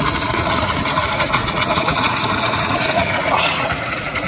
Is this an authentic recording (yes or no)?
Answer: no